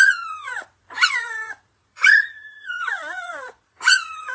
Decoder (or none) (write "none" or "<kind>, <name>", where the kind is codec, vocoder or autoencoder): vocoder, Vocos